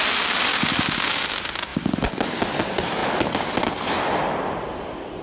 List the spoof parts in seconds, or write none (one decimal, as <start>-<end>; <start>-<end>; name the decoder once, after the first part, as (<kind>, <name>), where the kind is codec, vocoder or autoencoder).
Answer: 0.5-1.2 (codec, DAC)